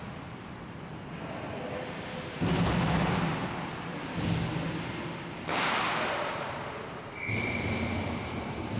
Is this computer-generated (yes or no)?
no